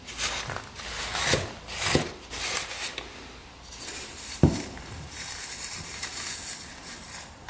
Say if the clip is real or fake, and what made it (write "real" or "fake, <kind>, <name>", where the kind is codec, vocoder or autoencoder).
real